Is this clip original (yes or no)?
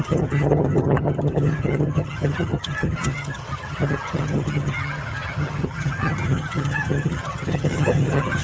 no